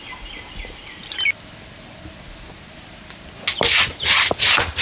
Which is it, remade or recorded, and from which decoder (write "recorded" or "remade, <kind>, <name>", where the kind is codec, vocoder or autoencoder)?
recorded